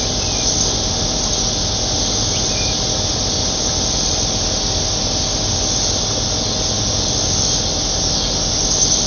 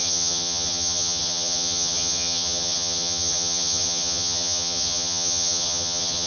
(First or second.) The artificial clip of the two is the second